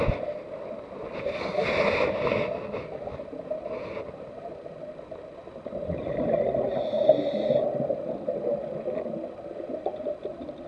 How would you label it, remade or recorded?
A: recorded